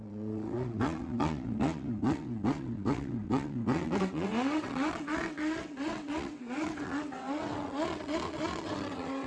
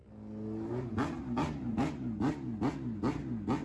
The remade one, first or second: first